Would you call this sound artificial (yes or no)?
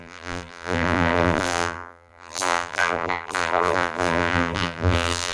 yes